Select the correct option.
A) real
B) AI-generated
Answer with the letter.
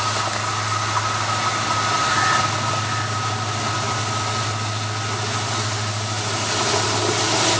A